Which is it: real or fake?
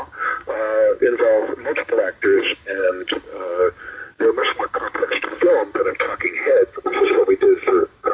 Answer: fake